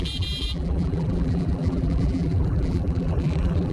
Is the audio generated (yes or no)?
yes